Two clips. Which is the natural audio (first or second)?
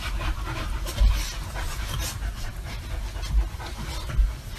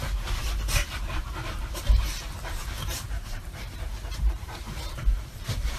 first